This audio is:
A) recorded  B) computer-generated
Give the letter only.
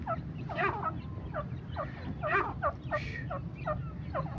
A